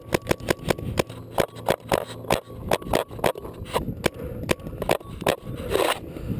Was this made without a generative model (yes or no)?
yes